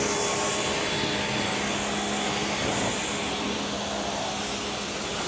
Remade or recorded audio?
recorded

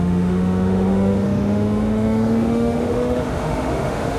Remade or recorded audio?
remade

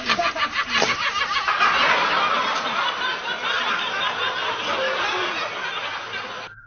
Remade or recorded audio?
recorded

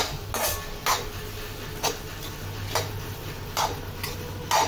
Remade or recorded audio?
recorded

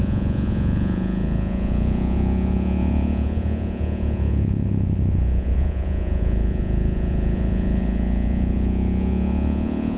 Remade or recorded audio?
remade